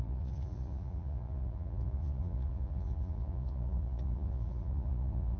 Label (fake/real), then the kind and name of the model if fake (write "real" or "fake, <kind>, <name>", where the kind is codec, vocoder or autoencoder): fake, vocoder, Vocos